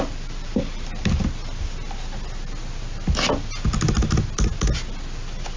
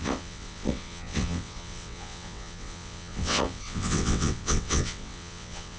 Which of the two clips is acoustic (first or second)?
first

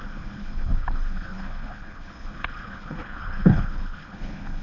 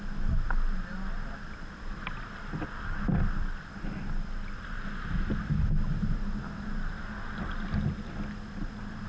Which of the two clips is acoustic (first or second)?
second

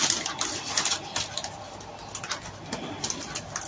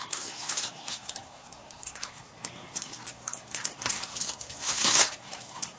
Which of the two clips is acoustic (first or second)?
first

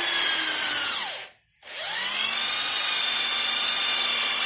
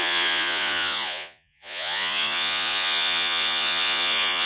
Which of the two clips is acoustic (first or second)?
first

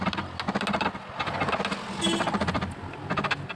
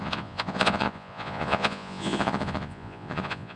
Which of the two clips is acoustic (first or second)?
first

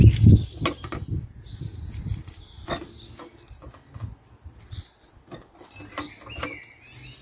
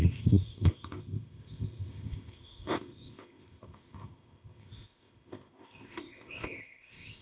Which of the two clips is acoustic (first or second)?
first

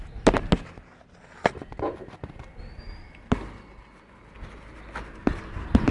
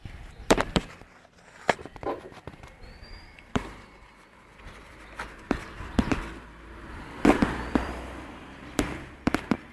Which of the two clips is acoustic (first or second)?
first